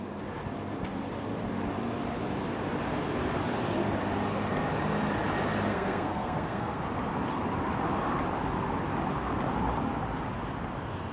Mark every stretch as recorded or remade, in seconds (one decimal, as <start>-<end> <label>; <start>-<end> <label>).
0.0-5.7 recorded; 5.7-6.8 remade; 6.8-11.1 recorded